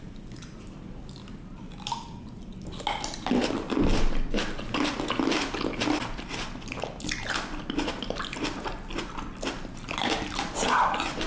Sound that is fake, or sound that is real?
real